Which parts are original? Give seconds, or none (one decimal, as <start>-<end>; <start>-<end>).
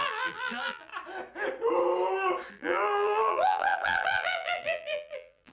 0.9-2.5